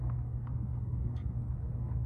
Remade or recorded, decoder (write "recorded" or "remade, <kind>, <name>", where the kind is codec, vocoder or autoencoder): remade, codec, SNAC